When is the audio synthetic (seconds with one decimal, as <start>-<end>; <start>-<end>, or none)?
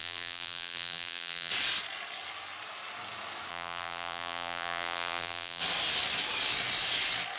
0.0-1.5; 3.5-5.6